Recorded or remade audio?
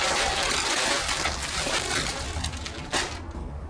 recorded